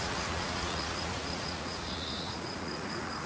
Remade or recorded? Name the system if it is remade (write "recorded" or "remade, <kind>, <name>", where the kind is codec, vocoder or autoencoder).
remade, vocoder, Vocos